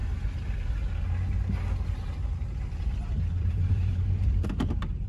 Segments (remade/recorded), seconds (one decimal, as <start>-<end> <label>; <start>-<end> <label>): 0.0-3.1 recorded; 3.1-5.1 remade